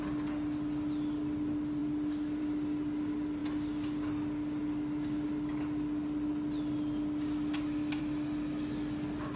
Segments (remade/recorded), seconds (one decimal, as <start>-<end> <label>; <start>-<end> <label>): 0.0-9.4 recorded

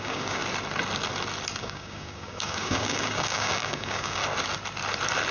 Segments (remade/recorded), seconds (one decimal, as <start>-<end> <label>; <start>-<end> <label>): 0.0-0.4 remade; 0.4-1.6 recorded; 1.6-4.2 remade; 4.2-5.3 recorded